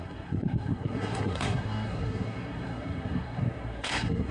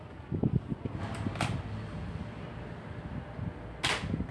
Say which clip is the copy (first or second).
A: first